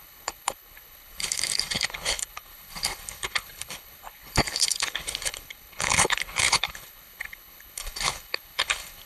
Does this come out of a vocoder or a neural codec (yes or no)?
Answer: yes